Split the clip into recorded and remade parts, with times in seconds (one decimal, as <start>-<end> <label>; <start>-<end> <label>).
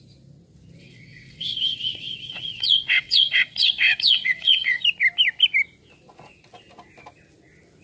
0.0-0.8 recorded; 0.8-4.8 remade; 4.8-7.8 recorded